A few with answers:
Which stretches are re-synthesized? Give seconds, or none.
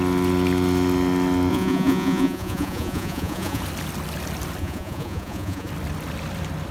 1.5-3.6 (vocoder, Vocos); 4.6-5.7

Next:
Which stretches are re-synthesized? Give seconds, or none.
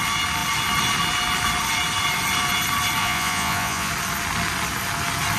3.0-3.9 (vocoder, Vocos)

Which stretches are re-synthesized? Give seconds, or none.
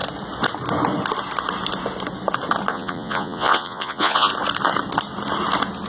2.7-4.3 (vocoder, Vocos)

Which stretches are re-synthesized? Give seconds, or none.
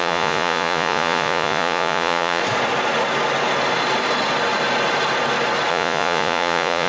0.0-2.4 (vocoder, Vocos); 5.7-6.9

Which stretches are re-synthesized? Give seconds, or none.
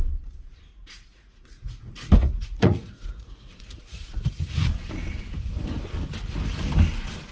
0.7-1.8 (vocoder, Vocos); 2.2-4.3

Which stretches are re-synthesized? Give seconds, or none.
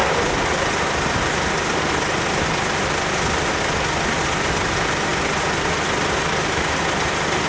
none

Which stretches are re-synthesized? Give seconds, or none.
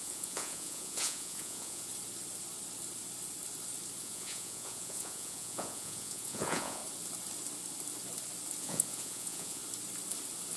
0.0-1.9 (vocoder, Vocos); 4.0-6.8; 8.6-9.6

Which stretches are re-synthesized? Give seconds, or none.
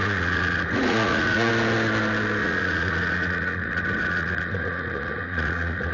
0.0-1.5 (vocoder, Vocos); 2.4-5.9